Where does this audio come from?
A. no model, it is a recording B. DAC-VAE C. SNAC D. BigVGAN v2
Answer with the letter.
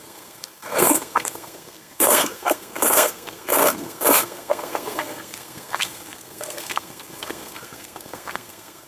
C